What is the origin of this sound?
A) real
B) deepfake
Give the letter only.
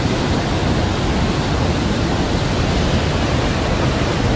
A